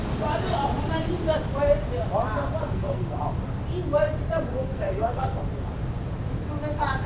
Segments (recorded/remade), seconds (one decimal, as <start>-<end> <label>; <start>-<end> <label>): 0.0-2.6 recorded; 2.6-3.2 remade; 3.2-4.5 recorded; 4.5-5.4 remade; 5.4-7.1 recorded